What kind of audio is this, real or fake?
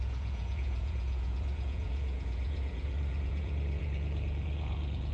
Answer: fake